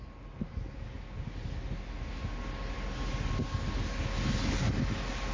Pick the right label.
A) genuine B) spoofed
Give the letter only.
A